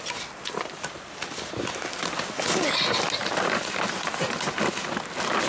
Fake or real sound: real